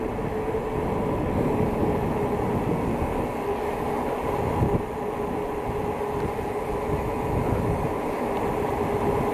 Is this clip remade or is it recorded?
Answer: recorded